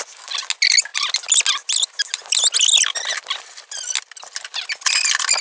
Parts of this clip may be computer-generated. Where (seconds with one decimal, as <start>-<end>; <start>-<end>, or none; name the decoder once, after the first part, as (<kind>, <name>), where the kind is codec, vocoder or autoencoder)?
none